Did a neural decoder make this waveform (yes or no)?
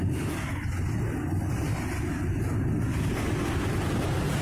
no